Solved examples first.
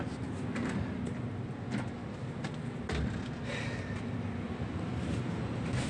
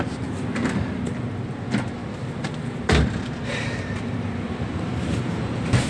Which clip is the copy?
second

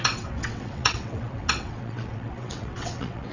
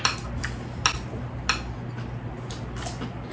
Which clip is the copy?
first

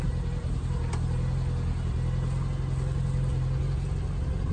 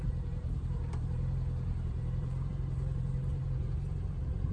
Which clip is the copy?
second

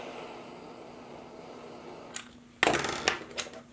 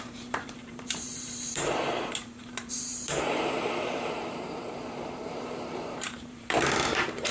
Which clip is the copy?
second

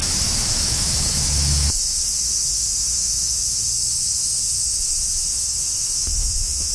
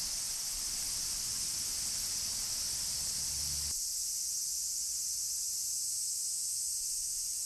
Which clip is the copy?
first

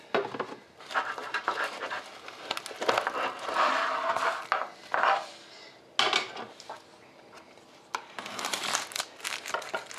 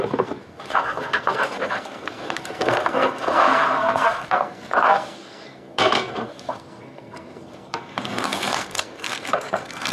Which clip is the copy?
second